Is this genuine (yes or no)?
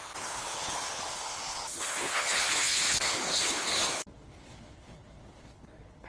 no